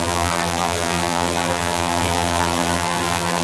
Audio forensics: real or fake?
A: fake